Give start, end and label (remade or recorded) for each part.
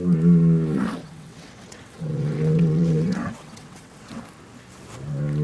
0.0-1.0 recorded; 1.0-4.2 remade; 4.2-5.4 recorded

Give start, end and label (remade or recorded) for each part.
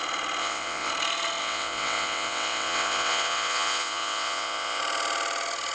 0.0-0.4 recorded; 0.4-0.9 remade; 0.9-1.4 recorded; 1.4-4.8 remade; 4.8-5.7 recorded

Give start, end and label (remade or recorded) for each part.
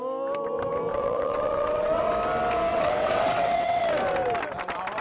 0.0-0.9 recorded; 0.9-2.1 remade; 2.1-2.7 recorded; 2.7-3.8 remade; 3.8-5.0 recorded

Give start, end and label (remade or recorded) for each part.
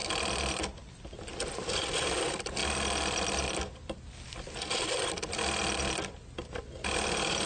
0.0-7.5 recorded